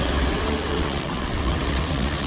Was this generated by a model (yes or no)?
yes